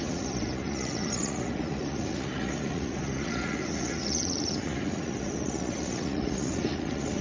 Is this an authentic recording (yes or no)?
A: no